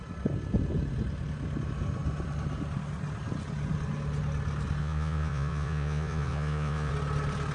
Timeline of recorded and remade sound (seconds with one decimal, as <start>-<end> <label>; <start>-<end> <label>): 0.0-4.8 recorded; 4.8-6.9 remade; 6.9-7.5 recorded